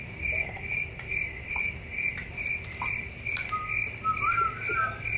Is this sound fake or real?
real